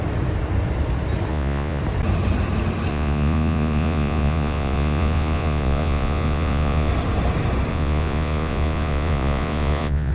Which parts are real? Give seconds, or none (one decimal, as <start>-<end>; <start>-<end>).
0.0-1.3; 1.8-2.9; 6.9-7.7